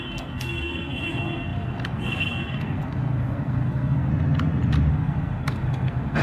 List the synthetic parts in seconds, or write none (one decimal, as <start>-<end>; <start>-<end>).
0.0-4.1; 4.9-6.2